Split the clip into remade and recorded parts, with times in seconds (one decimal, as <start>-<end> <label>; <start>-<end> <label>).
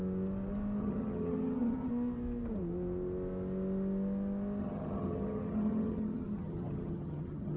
0.0-0.8 recorded; 0.8-1.9 remade; 1.9-4.6 recorded; 4.6-7.6 remade